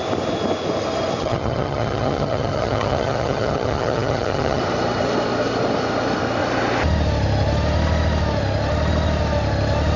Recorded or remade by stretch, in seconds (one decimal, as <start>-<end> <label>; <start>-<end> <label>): 0.0-1.2 recorded; 1.2-4.6 remade; 4.6-10.0 recorded